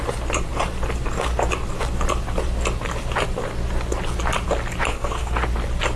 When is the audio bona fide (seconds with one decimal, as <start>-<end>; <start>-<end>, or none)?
0.0-4.9; 5.4-6.0